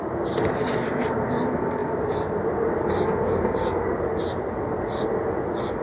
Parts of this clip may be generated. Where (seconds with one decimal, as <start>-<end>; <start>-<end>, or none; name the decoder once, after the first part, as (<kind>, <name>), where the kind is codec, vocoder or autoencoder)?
none